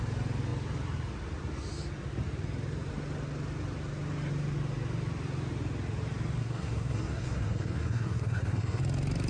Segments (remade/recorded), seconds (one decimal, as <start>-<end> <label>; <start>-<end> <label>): 0.0-6.4 recorded; 6.4-8.8 remade; 8.8-9.3 recorded